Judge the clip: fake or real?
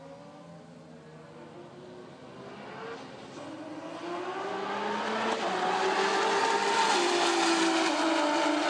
real